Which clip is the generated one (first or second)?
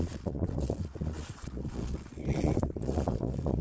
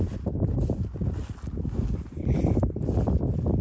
first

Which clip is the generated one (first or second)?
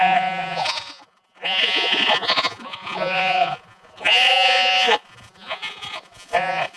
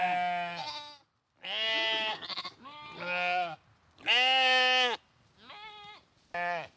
first